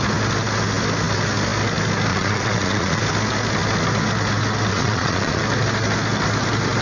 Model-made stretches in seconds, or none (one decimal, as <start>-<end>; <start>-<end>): 2.1-3.0; 4.7-5.4